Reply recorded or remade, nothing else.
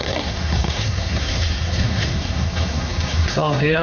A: remade